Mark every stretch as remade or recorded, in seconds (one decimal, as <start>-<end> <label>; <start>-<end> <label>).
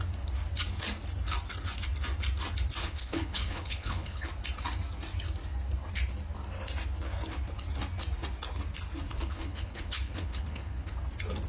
0.0-2.8 recorded; 2.8-4.3 remade; 4.3-9.1 recorded; 9.1-10.9 remade; 10.9-11.5 recorded